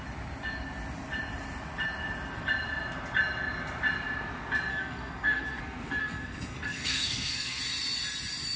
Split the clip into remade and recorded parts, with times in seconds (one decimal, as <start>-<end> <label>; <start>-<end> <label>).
0.0-4.7 recorded; 4.7-5.6 remade; 5.6-6.0 recorded; 6.0-7.6 remade; 7.6-8.6 recorded